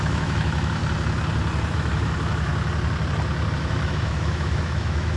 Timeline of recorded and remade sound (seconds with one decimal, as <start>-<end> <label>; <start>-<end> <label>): 0.0-0.8 remade; 0.8-1.7 recorded; 1.7-2.5 remade; 2.5-3.6 recorded; 3.6-5.2 remade